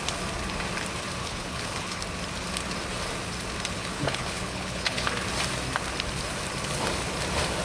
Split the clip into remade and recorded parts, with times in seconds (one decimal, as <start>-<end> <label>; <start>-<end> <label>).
0.0-1.2 recorded; 1.2-2.0 remade; 2.0-3.8 recorded; 3.8-5.1 remade; 5.1-7.6 recorded